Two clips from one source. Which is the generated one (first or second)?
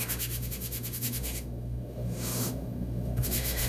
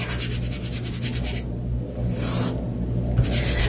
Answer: first